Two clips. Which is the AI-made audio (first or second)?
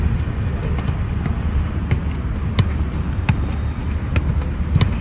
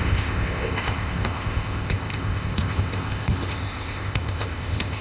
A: second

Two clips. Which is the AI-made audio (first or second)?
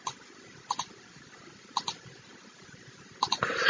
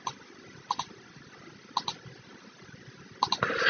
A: first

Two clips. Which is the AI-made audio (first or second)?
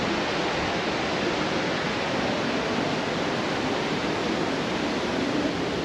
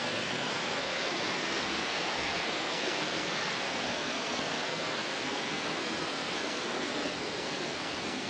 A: second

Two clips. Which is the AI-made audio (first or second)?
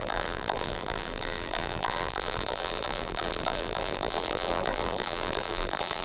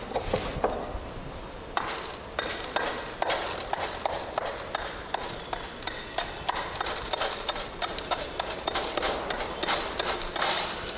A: first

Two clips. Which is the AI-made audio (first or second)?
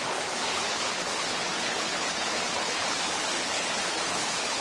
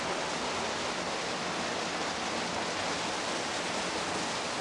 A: first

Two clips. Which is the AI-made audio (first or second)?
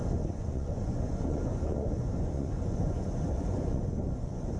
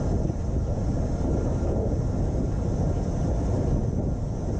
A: first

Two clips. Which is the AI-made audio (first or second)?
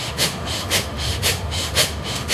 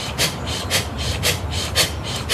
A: first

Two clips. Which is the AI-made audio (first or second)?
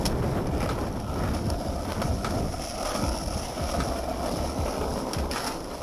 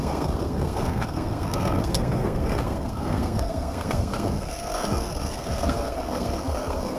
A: second